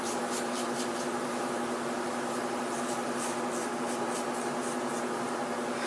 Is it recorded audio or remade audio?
remade